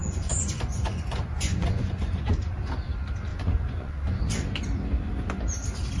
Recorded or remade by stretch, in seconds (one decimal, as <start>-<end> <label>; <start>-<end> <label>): 0.0-2.6 remade; 2.6-3.3 recorded; 3.3-4.2 remade; 4.2-6.0 recorded